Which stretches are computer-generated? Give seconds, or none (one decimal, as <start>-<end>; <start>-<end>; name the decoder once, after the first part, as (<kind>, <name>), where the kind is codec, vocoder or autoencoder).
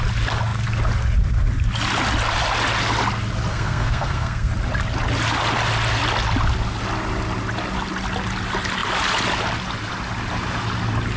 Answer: 3.5-4.5 (codec, SNAC)